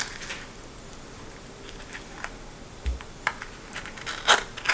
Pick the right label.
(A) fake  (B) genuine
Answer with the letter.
B